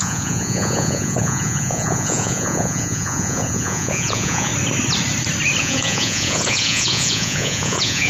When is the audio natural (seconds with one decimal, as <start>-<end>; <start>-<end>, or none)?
4.5-5.6

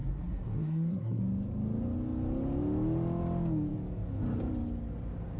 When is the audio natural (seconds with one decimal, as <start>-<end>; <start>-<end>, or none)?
1.2-5.4

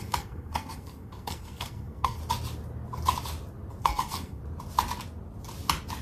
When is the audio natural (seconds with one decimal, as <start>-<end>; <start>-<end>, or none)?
2.2-3.8; 4.4-6.0

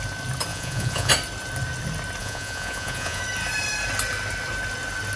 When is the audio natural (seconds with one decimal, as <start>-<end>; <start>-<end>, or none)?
0.0-0.5; 1.1-2.2; 3.2-5.2

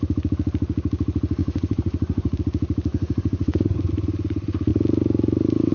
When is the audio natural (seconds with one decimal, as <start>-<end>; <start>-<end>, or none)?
0.0-1.4; 2.4-2.9; 3.9-5.7